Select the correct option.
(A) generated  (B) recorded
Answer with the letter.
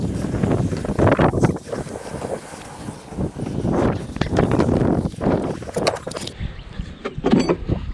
B